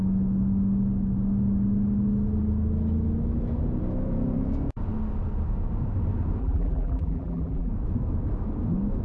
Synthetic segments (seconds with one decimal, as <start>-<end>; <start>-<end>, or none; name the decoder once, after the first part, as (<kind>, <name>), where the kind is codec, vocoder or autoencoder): 6.4-7.7 (vocoder, BigVGAN v2)